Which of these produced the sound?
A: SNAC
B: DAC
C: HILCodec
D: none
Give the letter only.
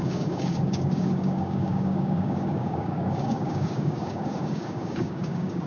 B